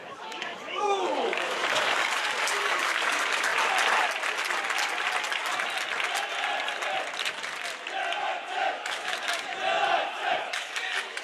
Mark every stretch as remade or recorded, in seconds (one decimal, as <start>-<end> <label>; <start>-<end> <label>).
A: 0.0-3.5 remade; 3.5-8.5 recorded; 8.5-9.5 remade; 9.5-10.4 recorded; 10.4-11.2 remade